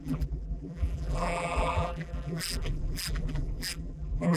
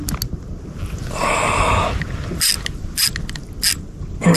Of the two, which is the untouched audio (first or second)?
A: second